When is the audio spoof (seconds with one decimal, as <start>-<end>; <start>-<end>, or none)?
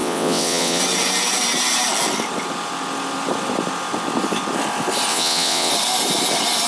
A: 0.0-0.8; 5.1-5.7